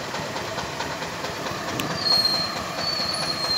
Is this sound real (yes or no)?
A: no